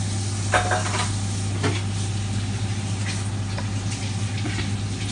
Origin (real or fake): real